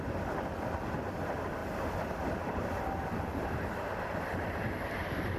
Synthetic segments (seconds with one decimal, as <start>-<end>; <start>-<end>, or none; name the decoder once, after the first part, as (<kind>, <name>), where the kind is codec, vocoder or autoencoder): none